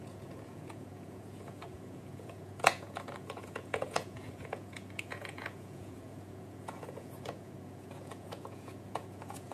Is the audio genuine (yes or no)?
no